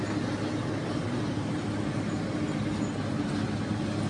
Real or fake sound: real